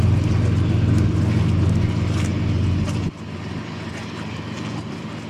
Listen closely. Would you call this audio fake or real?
real